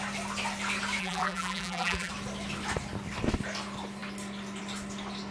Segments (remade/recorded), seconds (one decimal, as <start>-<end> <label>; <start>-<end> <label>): 0.0-1.0 recorded; 1.0-2.1 remade; 2.1-5.3 recorded